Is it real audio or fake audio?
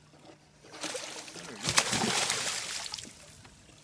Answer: real